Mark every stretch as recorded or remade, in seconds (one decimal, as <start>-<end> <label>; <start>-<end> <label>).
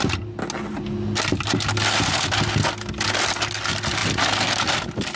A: 0.0-5.2 recorded